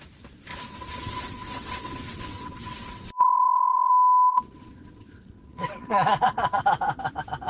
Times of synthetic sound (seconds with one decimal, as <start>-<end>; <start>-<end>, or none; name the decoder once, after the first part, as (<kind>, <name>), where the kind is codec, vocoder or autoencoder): 0.5-3.9 (vocoder, WaveNeXt); 4.3-6.6